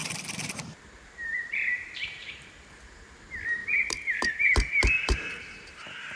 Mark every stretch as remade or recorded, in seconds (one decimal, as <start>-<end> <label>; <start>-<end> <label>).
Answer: 0.0-2.3 remade; 2.3-3.6 recorded; 3.6-6.2 remade

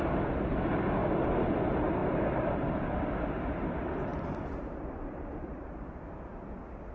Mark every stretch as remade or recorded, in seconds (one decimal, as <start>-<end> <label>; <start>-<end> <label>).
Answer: 0.0-1.0 recorded; 1.0-1.6 remade; 1.6-4.1 recorded; 4.1-5.9 remade; 5.9-6.9 recorded

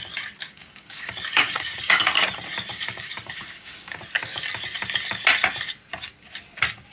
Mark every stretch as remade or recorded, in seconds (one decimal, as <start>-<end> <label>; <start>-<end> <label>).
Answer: 0.0-0.4 recorded; 0.4-2.1 remade; 2.1-2.7 recorded; 2.7-4.0 remade; 4.0-6.9 recorded

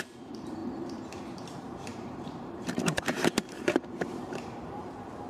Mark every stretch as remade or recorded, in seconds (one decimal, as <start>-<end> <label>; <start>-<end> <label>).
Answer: 0.0-0.6 remade; 0.6-1.2 recorded; 1.2-5.3 remade